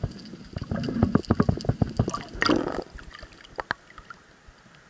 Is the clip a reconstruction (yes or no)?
no